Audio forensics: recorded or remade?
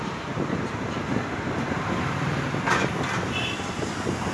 remade